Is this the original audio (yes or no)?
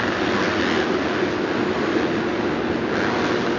yes